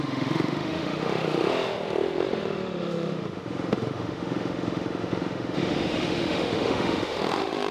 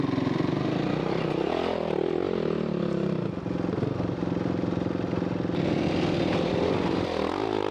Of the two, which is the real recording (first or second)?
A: second